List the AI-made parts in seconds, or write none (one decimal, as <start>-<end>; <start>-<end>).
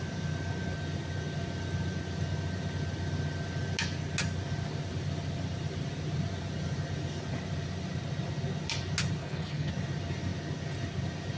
9.2-9.7